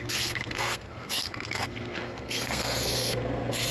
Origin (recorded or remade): remade